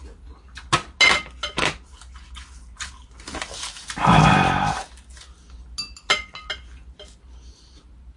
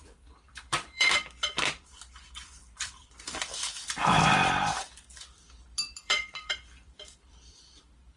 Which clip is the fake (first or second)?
second